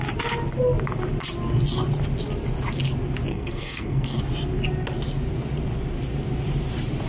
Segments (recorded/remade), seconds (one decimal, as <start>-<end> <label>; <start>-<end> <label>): 0.0-3.3 recorded; 3.3-4.2 remade; 4.2-7.1 recorded